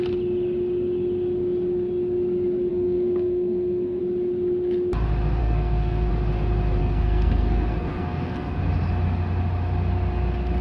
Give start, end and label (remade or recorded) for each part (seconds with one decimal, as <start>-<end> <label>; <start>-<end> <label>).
0.0-2.7 recorded; 2.7-4.0 remade; 4.0-5.4 recorded; 5.4-6.1 remade; 6.1-6.8 recorded; 6.8-8.6 remade; 8.6-10.6 recorded